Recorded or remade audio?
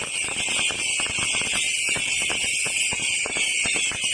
recorded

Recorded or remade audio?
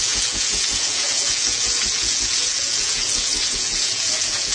remade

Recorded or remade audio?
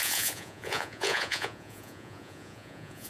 remade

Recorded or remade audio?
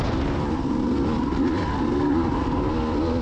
recorded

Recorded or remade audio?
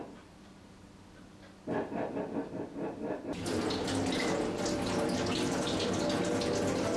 recorded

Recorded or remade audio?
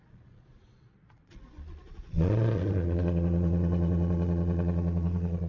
remade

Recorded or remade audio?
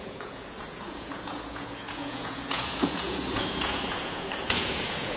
remade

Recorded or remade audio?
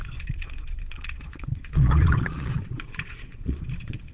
remade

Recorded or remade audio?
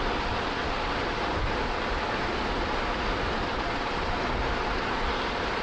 recorded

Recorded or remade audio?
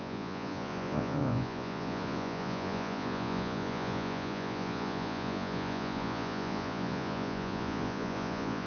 remade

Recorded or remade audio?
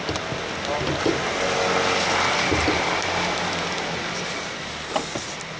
recorded